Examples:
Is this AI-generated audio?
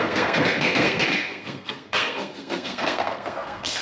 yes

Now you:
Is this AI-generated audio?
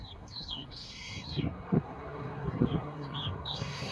yes